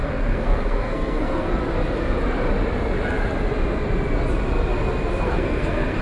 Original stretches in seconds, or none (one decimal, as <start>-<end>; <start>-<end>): 1.6-5.2